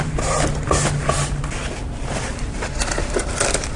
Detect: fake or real real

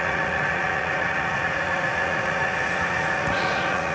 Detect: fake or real fake